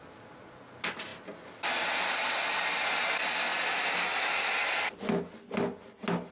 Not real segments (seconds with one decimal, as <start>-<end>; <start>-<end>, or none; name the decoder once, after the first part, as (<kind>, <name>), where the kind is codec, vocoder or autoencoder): none